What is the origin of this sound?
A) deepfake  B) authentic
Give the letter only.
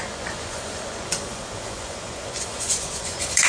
A